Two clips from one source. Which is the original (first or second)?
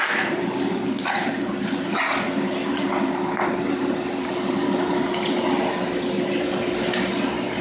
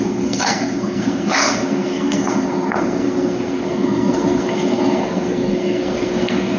first